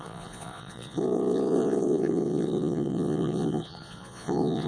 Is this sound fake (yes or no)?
yes